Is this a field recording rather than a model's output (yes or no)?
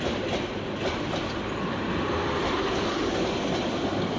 yes